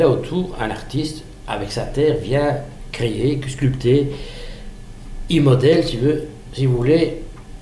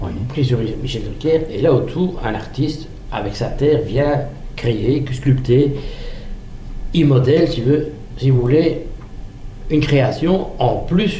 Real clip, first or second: first